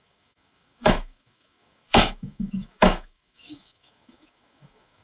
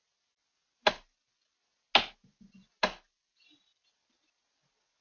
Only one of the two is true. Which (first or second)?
second